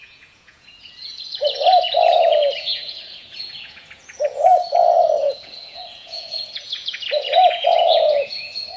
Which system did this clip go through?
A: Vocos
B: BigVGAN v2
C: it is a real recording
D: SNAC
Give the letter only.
A